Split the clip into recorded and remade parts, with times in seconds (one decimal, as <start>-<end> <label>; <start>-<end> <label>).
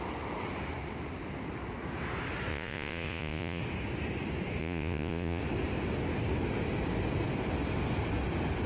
0.0-2.5 recorded; 2.5-3.6 remade; 3.6-4.6 recorded; 4.6-5.4 remade; 5.4-8.7 recorded